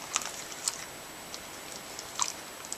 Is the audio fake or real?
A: real